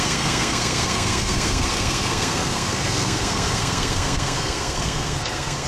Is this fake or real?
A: fake